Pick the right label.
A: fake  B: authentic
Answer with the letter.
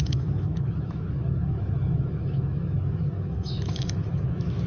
A